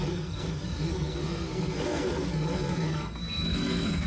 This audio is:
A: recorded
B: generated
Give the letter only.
B